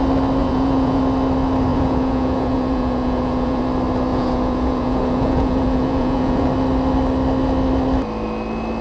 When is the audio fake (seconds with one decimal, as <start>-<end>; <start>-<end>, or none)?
0.4-1.0; 1.7-3.6; 4.1-6.5